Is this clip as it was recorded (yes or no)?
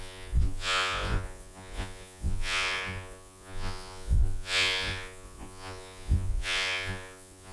no